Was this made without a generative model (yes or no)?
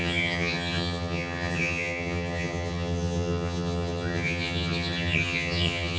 no